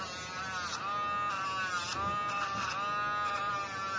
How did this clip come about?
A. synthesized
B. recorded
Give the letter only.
B